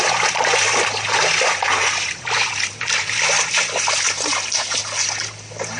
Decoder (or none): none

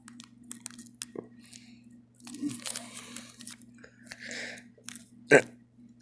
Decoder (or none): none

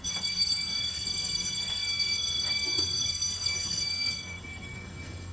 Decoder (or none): codec, SNAC